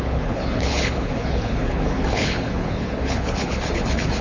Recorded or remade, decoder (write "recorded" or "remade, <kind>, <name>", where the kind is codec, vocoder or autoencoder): remade, codec, HILCodec